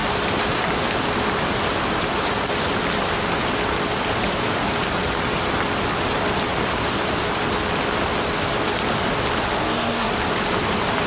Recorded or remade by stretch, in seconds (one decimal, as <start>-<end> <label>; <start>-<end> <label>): 0.0-9.6 recorded; 9.6-10.1 remade; 10.1-11.1 recorded